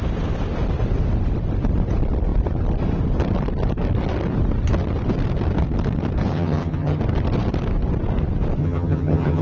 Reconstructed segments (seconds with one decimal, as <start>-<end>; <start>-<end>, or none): 6.3-7.0; 8.6-9.4